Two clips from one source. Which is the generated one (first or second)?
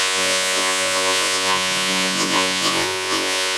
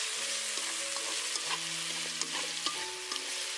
first